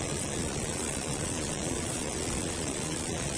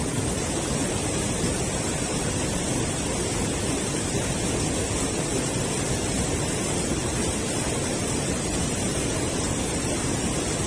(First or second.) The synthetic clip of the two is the first